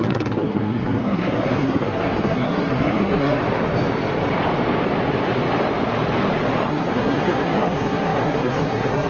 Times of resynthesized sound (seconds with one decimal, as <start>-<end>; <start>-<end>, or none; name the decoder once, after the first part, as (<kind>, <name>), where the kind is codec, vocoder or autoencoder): 0.0-3.4 (codec, SNAC); 6.7-9.1